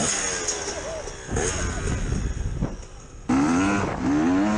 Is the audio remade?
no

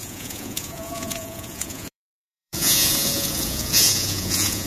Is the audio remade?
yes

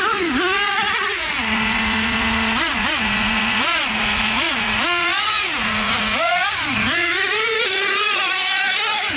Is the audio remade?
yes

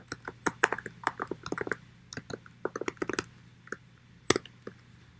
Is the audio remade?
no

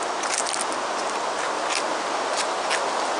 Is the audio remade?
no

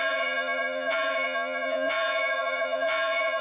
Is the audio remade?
yes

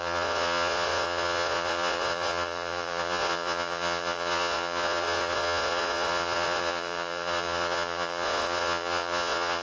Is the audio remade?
yes